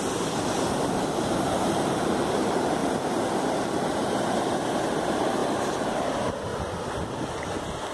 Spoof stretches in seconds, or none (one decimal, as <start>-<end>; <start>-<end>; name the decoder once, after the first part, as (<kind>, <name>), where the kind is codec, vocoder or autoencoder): 0.0-6.5 (vocoder, BigVGAN v2)